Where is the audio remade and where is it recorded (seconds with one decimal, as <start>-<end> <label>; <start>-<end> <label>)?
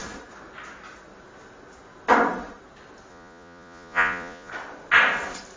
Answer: 0.0-3.1 recorded; 3.1-4.5 remade; 4.5-5.6 recorded